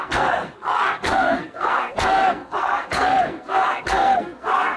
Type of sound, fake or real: fake